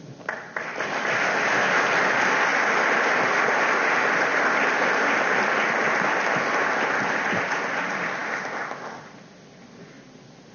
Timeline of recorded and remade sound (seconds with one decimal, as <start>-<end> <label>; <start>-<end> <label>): 0.0-10.5 recorded